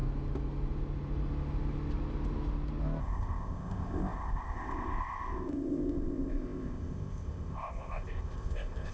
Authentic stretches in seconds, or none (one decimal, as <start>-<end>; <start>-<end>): 0.0-3.0